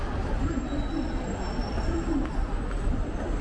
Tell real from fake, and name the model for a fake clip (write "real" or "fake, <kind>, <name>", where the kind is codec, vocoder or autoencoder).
fake, vocoder, BigVGAN v2